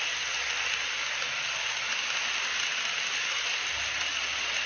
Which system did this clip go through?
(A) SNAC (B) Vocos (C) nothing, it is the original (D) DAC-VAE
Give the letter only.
C